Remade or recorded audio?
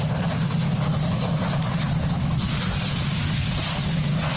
recorded